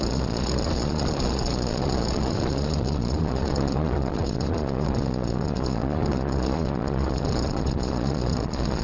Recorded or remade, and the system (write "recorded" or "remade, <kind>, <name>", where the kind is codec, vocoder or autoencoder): remade, vocoder, Vocos